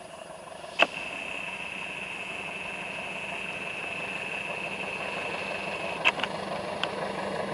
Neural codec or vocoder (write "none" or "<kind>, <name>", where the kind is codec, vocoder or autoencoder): none